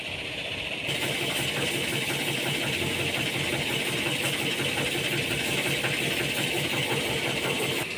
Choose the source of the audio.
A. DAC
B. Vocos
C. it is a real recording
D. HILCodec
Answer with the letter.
C